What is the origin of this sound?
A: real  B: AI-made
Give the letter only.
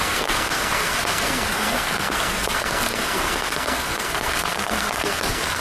B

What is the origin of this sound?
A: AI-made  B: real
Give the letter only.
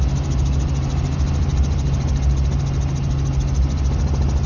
B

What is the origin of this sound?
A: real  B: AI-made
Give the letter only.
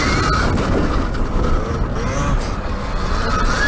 A